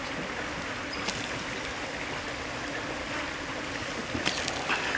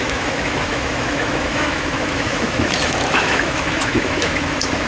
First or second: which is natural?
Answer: first